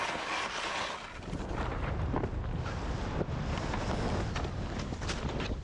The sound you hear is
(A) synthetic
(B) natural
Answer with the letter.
B